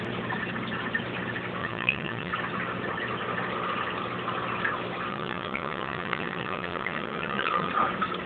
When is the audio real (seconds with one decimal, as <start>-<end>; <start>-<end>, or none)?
0.0-1.6; 2.3-5.1; 7.7-8.3